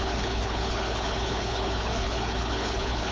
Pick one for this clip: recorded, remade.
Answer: remade